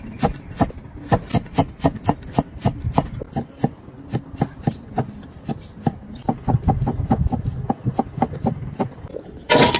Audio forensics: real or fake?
real